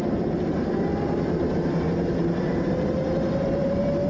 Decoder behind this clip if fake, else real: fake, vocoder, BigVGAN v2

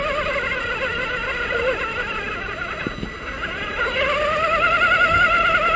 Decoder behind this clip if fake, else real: real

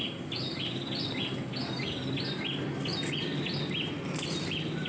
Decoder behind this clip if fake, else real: real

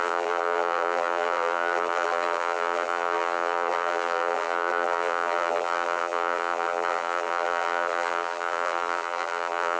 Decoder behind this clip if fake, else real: fake, vocoder, BigVGAN v2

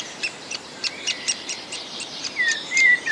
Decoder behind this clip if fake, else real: fake, vocoder, BigVGAN v2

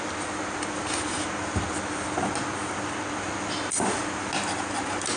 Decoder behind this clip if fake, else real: real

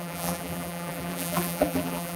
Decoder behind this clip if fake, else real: fake, vocoder, BigVGAN v2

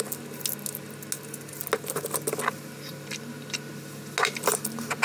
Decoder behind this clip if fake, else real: real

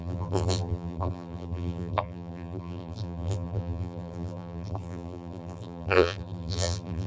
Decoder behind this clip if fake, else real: fake, vocoder, BigVGAN v2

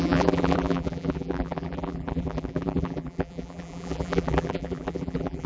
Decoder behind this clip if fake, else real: fake, vocoder, BigVGAN v2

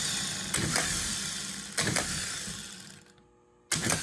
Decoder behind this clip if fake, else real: real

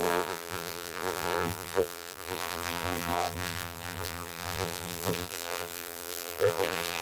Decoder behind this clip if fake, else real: fake, vocoder, BigVGAN v2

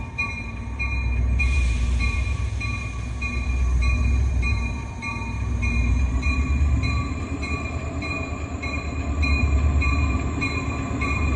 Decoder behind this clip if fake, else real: fake, vocoder, BigVGAN v2